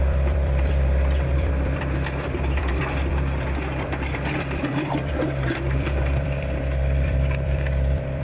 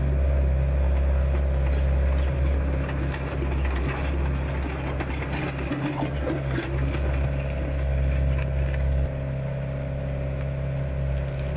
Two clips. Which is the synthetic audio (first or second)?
first